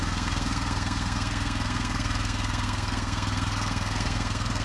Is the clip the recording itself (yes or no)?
no